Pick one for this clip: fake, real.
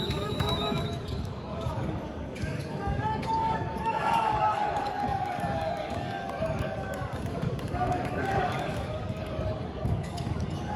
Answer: fake